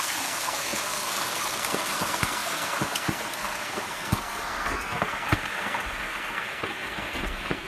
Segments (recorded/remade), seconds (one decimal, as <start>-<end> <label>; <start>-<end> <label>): 0.0-7.7 remade